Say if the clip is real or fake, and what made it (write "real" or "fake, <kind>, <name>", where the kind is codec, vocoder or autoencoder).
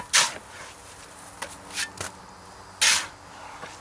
real